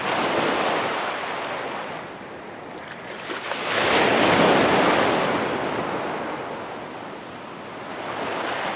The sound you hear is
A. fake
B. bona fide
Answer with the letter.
B